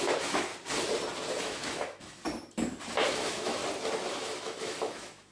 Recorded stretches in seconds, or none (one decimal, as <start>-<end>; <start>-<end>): 0.5-1.4; 2.2-3.1; 3.6-4.1

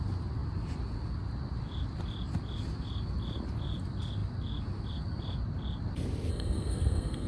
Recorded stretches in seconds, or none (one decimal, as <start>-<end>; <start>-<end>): 0.0-6.3

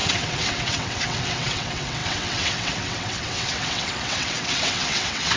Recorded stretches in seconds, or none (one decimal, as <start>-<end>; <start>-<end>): none

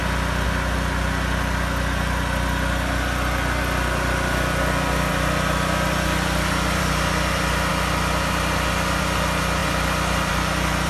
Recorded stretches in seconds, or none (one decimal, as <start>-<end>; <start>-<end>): 0.0-10.9

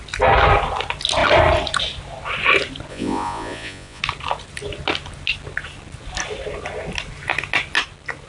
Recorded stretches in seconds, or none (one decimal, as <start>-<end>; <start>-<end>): 0.0-2.9; 4.0-8.3

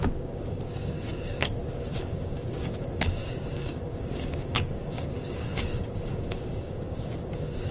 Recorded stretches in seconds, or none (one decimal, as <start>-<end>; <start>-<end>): none

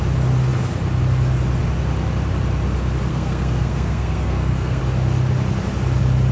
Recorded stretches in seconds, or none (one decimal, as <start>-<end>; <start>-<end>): 0.0-3.1; 4.8-6.3

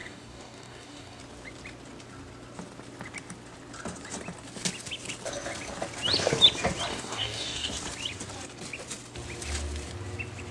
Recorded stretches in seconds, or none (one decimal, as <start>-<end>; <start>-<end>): 1.2-6.9; 7.7-10.5